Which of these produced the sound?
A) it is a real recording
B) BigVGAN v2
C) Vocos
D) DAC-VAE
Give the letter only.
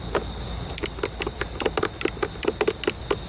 A